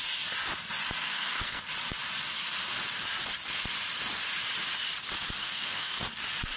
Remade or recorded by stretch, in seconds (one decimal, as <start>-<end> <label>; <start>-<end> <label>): 0.0-1.0 recorded; 1.0-1.6 remade; 1.6-5.4 recorded; 5.4-6.0 remade; 6.0-6.6 recorded